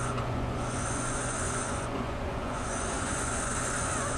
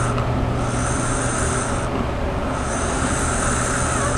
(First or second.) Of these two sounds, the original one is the second